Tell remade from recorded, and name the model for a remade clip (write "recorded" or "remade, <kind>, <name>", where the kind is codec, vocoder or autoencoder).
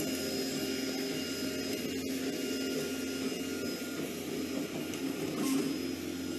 recorded